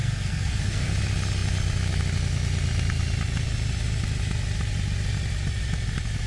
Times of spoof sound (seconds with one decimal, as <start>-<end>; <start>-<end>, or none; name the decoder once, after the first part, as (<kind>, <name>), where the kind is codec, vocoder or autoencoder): 0.0-0.9 (codec, SNAC)